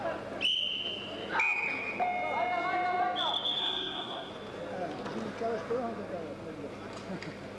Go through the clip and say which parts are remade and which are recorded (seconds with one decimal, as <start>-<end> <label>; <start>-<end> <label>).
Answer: 0.0-3.6 recorded; 3.6-4.3 remade; 4.3-7.6 recorded